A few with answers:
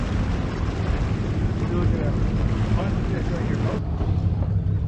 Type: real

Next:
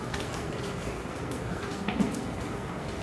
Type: fake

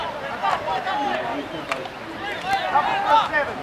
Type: real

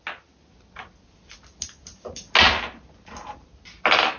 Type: real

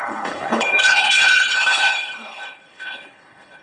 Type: fake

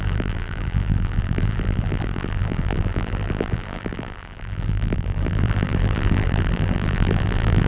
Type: fake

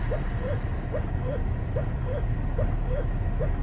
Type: real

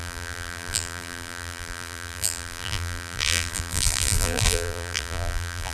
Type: fake